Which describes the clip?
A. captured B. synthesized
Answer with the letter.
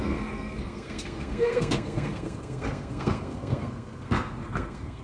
B